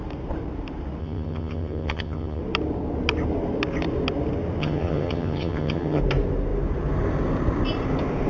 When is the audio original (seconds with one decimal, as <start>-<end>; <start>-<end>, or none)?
0.0-1.0; 2.4-4.6; 6.0-8.3